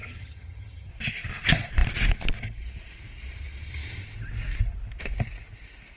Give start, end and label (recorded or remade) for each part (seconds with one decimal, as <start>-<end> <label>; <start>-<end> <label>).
0.0-0.9 remade; 0.9-6.0 recorded